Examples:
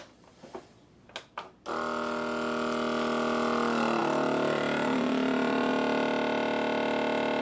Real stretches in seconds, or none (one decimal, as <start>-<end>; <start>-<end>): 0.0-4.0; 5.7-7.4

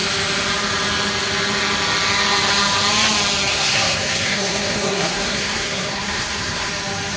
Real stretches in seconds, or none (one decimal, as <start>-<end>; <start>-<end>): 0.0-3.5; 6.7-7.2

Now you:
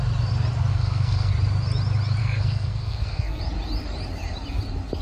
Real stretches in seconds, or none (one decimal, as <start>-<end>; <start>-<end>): 0.0-0.7; 1.3-2.2; 3.4-5.0